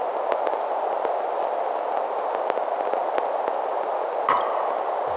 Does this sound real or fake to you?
real